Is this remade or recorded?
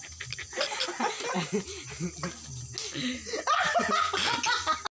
recorded